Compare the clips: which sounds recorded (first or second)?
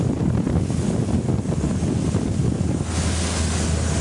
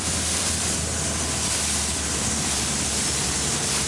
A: first